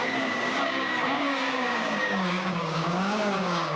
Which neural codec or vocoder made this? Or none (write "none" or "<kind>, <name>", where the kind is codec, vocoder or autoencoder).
codec, DAC